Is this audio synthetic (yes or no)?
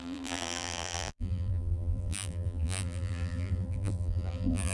yes